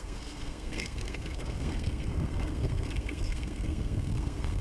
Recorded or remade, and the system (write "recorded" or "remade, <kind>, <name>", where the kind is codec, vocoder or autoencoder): remade, codec, SNAC